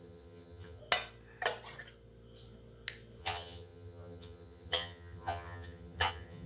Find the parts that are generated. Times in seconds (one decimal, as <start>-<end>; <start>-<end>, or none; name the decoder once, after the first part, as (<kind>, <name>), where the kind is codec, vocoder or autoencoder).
0.0-0.8 (vocoder, HiFi-GAN); 3.2-6.5